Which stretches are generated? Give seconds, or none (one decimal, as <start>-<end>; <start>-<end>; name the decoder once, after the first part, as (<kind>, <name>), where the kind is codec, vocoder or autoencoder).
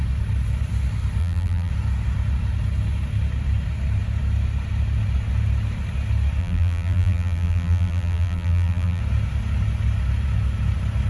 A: 1.2-1.7 (vocoder, BigVGAN v2); 6.4-9.0